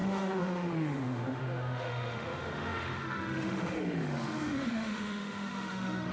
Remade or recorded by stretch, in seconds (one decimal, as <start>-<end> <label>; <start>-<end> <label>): 0.0-6.1 remade